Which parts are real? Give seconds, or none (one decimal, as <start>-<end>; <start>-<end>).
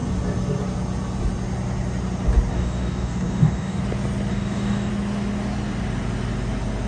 0.0-2.5; 3.8-4.3; 4.9-6.9